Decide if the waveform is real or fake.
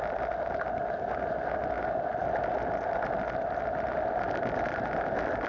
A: real